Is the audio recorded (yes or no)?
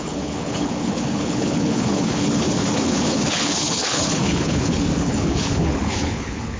no